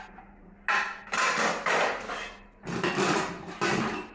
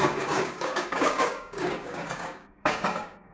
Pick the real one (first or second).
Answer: first